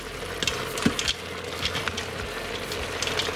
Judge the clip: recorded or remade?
recorded